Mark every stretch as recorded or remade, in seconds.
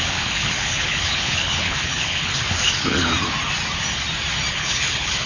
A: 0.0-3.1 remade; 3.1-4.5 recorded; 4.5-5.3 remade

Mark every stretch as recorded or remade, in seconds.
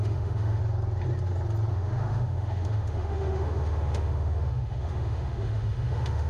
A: 0.0-0.6 remade; 0.6-1.7 recorded; 1.7-6.3 remade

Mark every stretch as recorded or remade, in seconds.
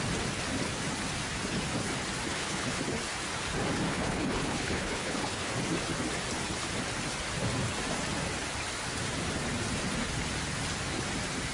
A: 0.0-2.3 recorded; 2.3-2.8 remade; 2.8-3.9 recorded; 3.9-5.5 remade; 5.5-11.5 recorded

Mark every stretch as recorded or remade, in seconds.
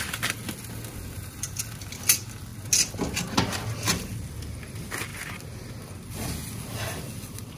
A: 0.0-7.6 recorded